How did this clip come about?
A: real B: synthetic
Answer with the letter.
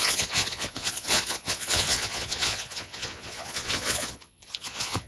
B